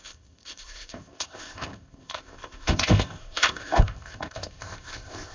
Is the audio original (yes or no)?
no